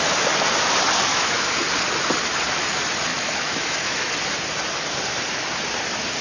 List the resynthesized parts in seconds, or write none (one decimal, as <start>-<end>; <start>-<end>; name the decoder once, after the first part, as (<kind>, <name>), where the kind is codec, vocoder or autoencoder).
1.1-1.6 (autoencoder, DAC-VAE); 3.1-4.1